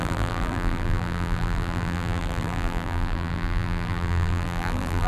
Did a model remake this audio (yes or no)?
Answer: yes